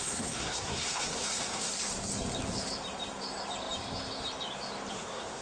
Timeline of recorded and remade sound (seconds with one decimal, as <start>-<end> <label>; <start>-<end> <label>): 0.0-1.7 remade; 1.7-4.9 recorded; 4.9-5.4 remade